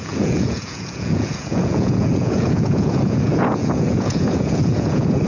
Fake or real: fake